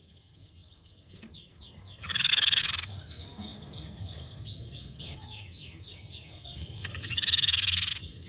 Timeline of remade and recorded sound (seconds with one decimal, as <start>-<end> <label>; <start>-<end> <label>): 0.0-8.3 remade